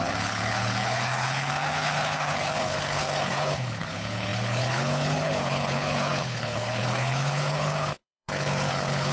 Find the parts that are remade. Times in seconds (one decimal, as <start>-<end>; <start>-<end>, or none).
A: 0.0-9.1